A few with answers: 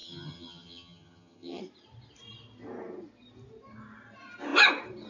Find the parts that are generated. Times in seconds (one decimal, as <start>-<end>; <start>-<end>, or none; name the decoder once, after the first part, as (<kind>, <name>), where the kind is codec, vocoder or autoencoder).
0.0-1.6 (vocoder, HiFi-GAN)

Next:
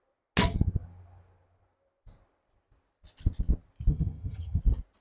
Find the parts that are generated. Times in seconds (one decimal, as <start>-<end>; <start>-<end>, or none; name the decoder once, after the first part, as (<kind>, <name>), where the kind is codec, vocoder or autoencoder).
3.9-4.6 (vocoder, HiFi-GAN)

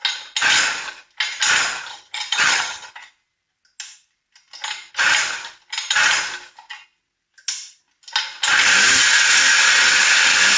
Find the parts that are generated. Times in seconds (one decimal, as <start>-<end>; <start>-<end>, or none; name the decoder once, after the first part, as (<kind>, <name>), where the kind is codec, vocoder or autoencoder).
1.9-2.9 (vocoder, HiFi-GAN)

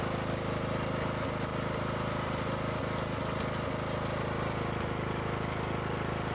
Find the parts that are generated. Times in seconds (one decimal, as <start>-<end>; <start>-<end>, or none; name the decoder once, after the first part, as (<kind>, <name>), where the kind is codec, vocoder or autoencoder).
none

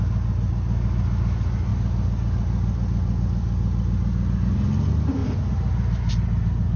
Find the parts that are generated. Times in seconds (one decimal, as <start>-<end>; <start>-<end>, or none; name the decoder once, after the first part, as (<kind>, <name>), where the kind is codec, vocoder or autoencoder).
none

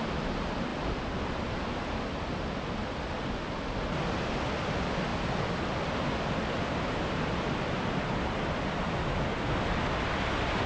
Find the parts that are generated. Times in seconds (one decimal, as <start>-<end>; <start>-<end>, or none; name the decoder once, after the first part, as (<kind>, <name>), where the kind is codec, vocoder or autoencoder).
none